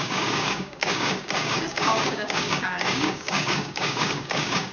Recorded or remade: remade